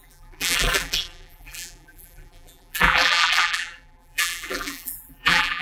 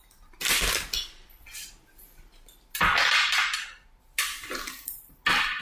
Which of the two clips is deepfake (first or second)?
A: first